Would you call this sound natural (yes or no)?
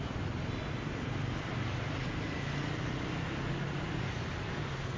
yes